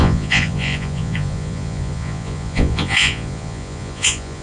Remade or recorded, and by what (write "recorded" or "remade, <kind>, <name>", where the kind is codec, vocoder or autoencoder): remade, vocoder, Vocos